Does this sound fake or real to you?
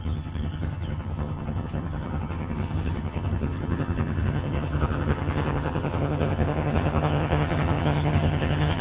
fake